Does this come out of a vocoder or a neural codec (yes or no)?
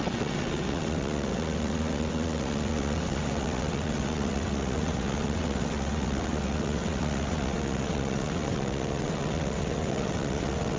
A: yes